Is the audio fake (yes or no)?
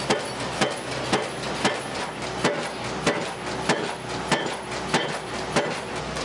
no